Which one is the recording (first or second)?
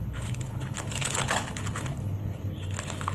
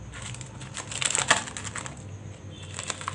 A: second